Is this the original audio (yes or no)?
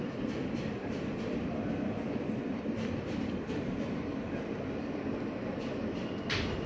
yes